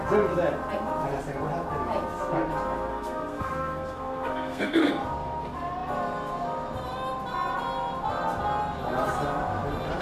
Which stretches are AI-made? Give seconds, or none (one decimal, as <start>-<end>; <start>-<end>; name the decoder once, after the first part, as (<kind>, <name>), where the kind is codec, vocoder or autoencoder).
2.9-4.9 (codec, SNAC)

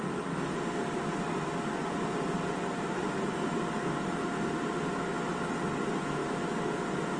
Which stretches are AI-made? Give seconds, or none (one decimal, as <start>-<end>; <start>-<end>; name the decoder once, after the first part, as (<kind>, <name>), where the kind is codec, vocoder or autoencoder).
1.8-3.4 (vocoder, BigVGAN v2)

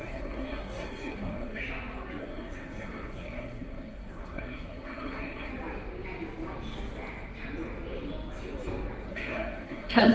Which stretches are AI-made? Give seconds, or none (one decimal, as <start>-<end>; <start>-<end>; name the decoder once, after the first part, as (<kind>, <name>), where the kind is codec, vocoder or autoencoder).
0.0-1.6 (codec, SNAC); 2.2-5.5; 9.1-10.1

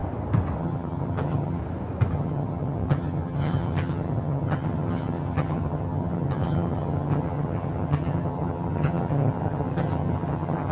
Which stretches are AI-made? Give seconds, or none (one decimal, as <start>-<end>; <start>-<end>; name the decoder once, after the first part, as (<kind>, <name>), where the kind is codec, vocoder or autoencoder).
0.6-1.6 (vocoder, HiFi-GAN); 2.1-10.7

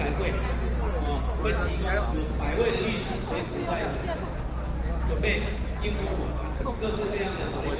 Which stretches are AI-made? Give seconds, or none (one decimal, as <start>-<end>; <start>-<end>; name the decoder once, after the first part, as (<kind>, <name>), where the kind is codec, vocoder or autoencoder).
6.3-6.8 (codec, SNAC)

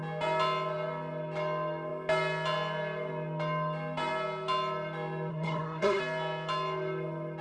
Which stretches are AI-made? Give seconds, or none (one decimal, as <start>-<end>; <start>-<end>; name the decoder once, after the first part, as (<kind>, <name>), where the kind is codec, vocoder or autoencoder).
5.3-6.0 (codec, SNAC)

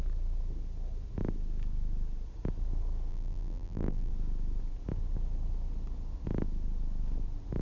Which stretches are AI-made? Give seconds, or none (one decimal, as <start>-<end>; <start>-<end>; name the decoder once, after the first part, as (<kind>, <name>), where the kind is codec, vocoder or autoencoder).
3.1-4.1 (vocoder, BigVGAN v2)